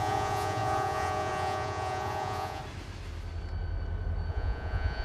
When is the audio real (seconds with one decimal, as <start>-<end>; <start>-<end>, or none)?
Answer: 2.6-4.3